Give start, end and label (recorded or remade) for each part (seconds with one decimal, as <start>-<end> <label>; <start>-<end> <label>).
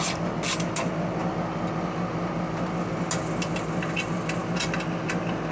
0.0-5.5 recorded